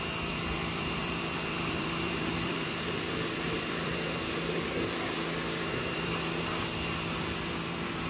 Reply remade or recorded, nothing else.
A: remade